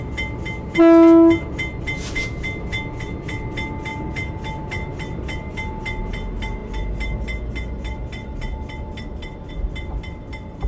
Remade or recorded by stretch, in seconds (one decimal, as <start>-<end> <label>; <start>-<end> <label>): 0.0-10.7 recorded